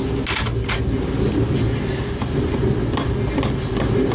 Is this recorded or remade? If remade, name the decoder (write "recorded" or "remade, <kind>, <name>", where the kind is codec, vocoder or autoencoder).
recorded